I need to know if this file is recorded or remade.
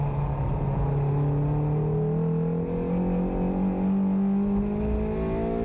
recorded